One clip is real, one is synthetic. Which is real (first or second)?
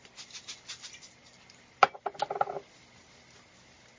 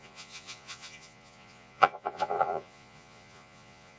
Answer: first